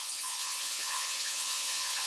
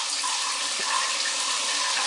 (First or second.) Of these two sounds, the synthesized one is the first